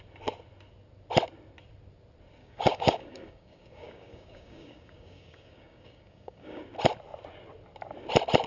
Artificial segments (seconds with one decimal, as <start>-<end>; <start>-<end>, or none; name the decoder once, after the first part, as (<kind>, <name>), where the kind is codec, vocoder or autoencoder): 2.4-6.6 (codec, DAC)

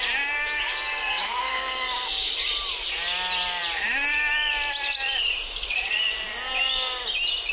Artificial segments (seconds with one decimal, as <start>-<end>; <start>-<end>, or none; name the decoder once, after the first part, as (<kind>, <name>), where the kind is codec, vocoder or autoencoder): 0.4-2.3 (codec, DAC)

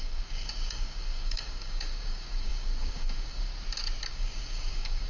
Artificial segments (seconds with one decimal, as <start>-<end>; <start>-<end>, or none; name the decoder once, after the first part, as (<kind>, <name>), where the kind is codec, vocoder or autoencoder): 0.0-3.5 (codec, DAC); 4.1-5.1

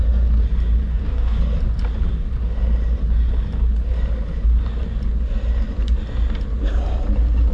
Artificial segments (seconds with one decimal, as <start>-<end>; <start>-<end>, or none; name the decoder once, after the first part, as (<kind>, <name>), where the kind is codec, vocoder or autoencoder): 0.9-1.4 (codec, DAC)

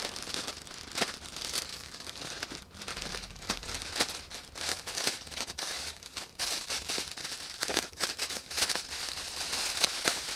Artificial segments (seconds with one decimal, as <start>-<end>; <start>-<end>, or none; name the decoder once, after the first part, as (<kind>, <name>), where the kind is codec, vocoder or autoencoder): 1.7-2.2 (codec, DAC); 2.9-3.8; 4.7-6.9; 7.6-8.5

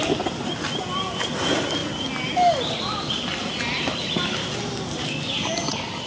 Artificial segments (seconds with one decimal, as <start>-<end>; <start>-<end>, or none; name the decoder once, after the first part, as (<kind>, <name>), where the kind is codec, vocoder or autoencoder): none

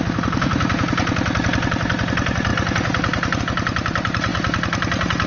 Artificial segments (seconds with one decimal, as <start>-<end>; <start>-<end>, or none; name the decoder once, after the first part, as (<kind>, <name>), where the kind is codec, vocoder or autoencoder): none

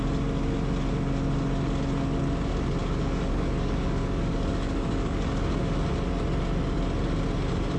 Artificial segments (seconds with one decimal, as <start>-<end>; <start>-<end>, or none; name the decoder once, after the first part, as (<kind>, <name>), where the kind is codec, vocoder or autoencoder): 2.8-5.6 (codec, DAC)